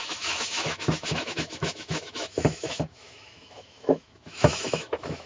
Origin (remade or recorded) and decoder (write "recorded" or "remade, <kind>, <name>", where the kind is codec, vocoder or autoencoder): remade, autoencoder, DAC-VAE